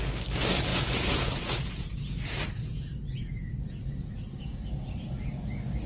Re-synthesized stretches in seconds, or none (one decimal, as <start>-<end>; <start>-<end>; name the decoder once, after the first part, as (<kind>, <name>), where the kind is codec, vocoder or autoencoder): 0.7-4.2 (vocoder, Vocos)